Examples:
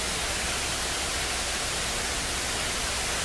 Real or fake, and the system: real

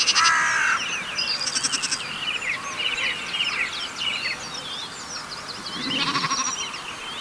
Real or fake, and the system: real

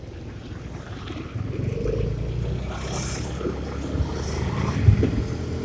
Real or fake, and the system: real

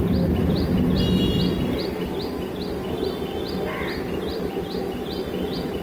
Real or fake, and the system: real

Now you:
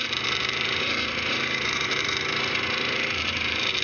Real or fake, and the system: fake, vocoder, BigVGAN v2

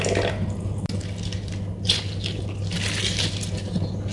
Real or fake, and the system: real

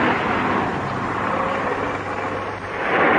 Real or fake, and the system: real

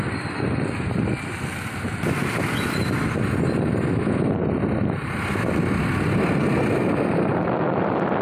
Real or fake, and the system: real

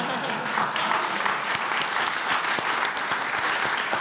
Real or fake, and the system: real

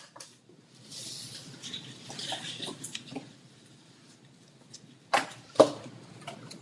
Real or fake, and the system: fake, vocoder, BigVGAN v2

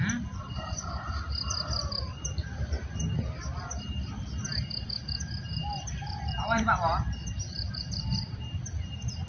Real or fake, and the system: real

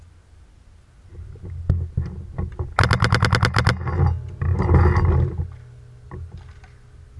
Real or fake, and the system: real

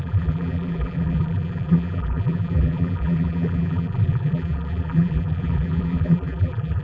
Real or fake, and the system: fake, vocoder, BigVGAN v2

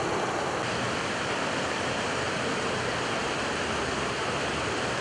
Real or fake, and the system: real